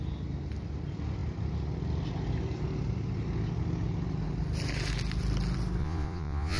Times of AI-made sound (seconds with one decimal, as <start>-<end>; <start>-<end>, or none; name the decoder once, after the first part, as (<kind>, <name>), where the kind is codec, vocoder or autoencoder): 5.8-6.6 (vocoder, Vocos)